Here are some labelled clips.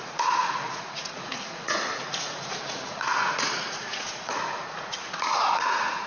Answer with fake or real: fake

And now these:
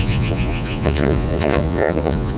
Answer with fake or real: fake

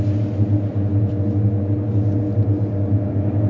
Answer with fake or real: real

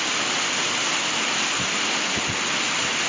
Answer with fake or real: real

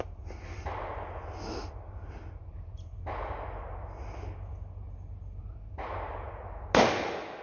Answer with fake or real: real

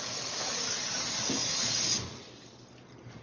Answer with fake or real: real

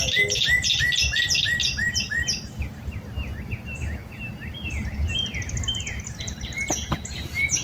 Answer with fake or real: real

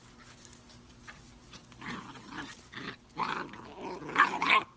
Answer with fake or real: real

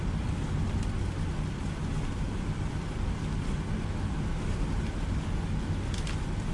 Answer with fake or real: real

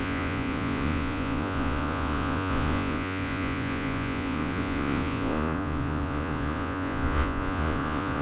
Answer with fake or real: fake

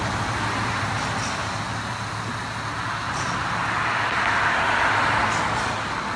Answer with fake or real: real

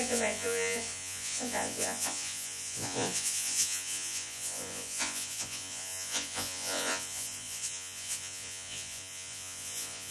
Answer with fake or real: fake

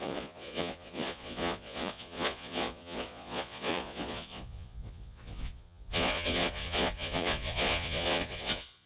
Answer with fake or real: fake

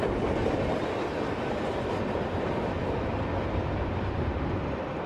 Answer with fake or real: real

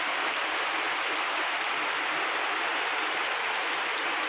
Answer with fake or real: real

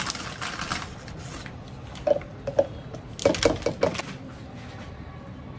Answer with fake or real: real